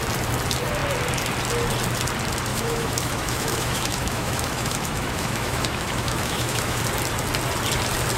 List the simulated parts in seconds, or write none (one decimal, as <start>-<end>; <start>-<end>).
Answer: 2.5-6.8